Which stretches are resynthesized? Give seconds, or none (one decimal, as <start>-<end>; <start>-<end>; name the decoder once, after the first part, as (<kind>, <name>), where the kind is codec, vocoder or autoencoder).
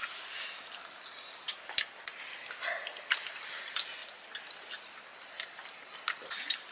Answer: none